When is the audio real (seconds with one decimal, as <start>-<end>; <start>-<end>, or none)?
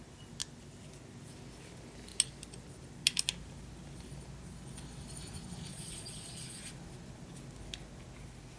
0.0-5.7; 6.7-8.6